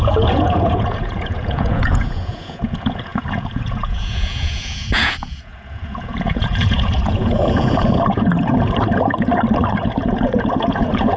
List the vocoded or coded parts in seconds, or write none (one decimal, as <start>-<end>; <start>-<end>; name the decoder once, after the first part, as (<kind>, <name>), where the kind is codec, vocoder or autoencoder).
0.0-9.3 (vocoder, Vocos); 9.8-11.2

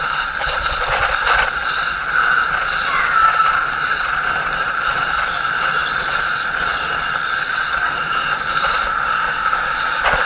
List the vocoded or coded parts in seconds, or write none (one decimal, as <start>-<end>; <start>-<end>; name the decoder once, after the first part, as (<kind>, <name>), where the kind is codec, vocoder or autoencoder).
none

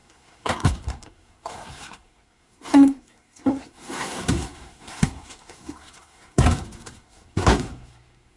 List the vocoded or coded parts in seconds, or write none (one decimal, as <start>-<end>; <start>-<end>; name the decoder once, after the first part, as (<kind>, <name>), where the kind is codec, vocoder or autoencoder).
0.0-8.4 (codec, SNAC)

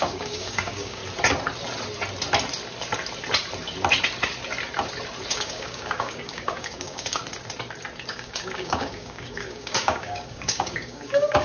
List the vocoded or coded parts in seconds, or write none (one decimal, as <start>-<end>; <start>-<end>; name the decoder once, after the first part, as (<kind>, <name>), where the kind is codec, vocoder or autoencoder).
0.0-1.0 (codec, DAC); 5.3-7.2; 8.1-11.4

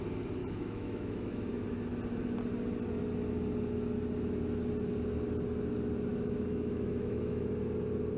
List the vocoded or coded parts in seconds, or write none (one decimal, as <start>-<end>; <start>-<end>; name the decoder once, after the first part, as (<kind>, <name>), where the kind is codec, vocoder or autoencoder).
0.4-1.5 (autoencoder, DAC-VAE); 6.1-7.5